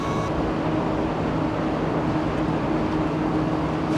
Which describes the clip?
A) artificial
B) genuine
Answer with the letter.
B